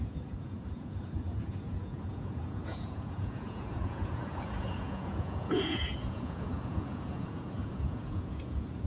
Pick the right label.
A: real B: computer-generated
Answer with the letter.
B